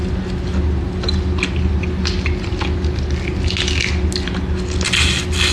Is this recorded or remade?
recorded